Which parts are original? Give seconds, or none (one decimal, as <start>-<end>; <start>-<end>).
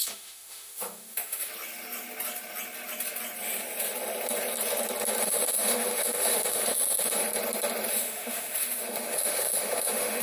1.5-5.2; 7.3-7.9